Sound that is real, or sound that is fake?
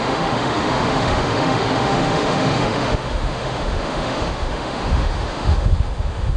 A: fake